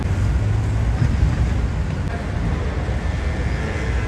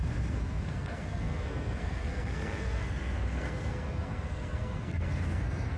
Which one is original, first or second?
first